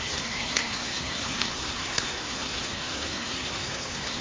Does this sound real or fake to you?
fake